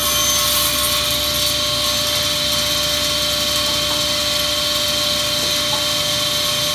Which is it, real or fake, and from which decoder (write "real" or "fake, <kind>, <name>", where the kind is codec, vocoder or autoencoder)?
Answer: real